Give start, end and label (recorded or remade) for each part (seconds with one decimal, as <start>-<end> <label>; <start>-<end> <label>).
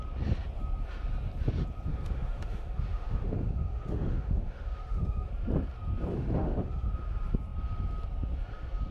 0.0-1.9 recorded; 1.9-5.3 remade; 5.3-6.1 recorded; 6.1-6.9 remade; 6.9-8.9 recorded